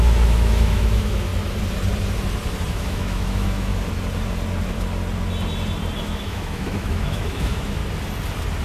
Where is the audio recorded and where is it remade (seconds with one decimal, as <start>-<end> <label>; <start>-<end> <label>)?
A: 0.0-1.3 remade; 1.3-2.7 recorded; 2.7-3.7 remade; 3.7-6.0 recorded; 6.0-7.8 remade; 7.8-8.6 recorded